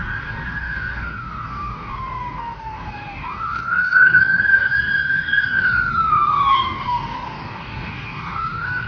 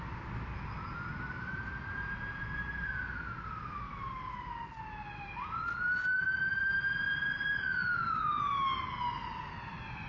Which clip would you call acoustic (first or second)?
second